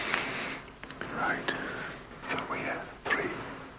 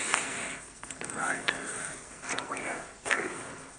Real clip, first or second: first